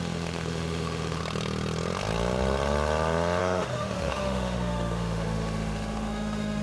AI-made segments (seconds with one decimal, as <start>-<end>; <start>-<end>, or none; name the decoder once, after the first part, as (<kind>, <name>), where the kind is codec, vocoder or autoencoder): 0.0-1.2 (autoencoder, DAC-VAE); 3.4-6.6